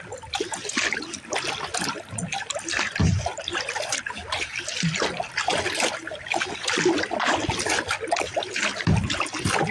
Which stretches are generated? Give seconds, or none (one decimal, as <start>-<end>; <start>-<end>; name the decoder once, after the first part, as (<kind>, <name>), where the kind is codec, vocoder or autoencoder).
2.3-3.0 (vocoder, BigVGAN v2); 5.5-9.2